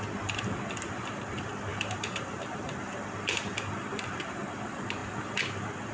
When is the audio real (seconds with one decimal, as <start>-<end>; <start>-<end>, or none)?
0.0-1.7; 3.0-3.9; 4.4-5.9